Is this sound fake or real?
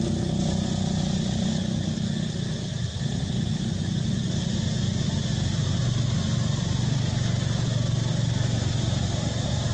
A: real